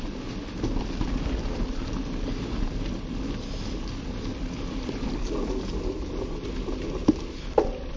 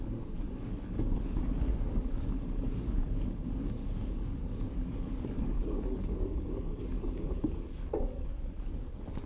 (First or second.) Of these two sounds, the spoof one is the second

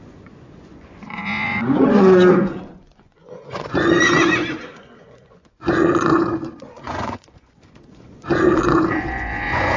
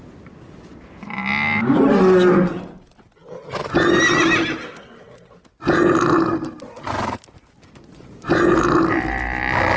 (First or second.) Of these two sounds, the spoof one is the first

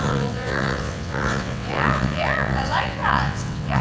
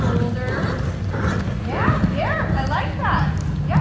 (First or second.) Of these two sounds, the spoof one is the first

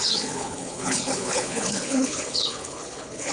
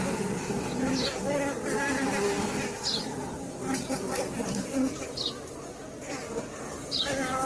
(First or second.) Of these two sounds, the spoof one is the first